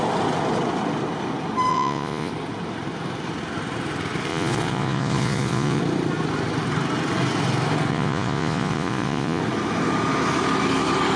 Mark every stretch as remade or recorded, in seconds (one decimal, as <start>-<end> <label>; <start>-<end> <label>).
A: 0.0-1.7 recorded; 1.7-2.3 remade; 2.3-4.3 recorded; 4.3-5.8 remade; 5.8-7.9 recorded; 7.9-9.4 remade; 9.4-11.2 recorded